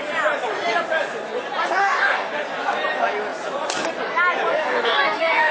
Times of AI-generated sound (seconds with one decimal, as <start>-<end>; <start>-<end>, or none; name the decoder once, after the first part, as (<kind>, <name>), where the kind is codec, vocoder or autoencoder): 1.8-2.3 (codec, DAC); 4.5-5.5